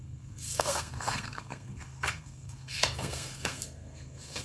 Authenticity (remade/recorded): remade